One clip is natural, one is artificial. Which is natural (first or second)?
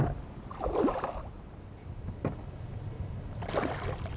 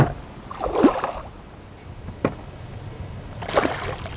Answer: second